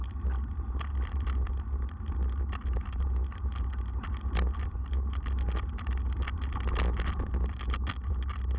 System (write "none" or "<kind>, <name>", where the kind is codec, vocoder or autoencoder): none